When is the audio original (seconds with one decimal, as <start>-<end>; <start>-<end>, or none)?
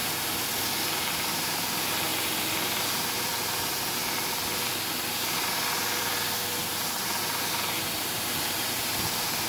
0.0-1.1; 2.1-2.8; 4.0-5.0; 6.1-6.7